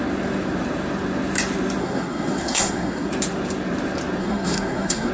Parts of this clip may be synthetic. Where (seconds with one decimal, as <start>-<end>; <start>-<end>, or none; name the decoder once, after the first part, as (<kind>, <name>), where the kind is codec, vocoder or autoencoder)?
1.8-3.1 (codec, SNAC); 4.2-5.1